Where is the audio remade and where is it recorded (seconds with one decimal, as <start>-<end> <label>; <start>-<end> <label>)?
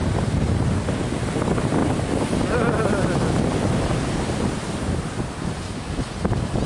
0.0-6.7 recorded